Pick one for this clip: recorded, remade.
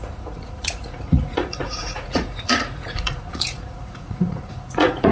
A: remade